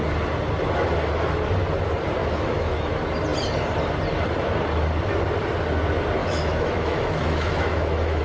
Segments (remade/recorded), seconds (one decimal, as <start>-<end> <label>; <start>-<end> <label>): 0.0-2.2 recorded; 2.2-2.9 remade; 2.9-6.2 recorded; 6.2-8.2 remade